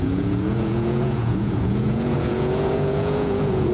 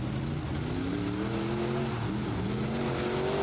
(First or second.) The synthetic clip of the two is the first